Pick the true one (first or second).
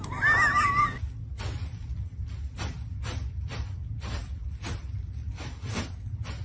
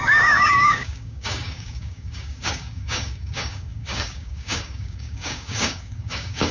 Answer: first